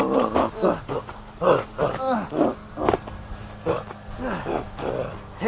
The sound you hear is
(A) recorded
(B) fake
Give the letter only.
A